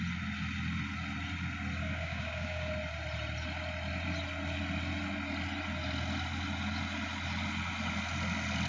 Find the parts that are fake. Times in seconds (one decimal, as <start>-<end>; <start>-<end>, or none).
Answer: 1.8-2.7